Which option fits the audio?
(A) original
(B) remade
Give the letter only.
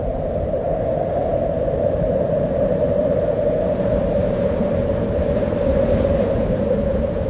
B